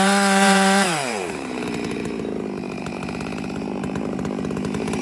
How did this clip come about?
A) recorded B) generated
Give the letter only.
B